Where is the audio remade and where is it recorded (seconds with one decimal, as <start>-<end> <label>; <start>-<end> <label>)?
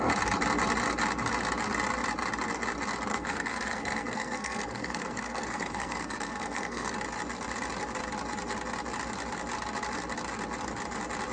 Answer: 0.0-3.1 recorded; 3.1-6.9 remade; 6.9-11.3 recorded